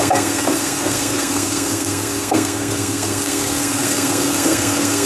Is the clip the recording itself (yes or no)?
no